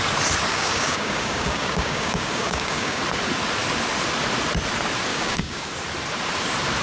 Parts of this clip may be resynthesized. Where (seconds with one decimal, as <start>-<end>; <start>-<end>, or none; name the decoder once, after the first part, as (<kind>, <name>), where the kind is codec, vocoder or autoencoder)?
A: 0.5-3.0 (codec, DAC); 5.1-5.7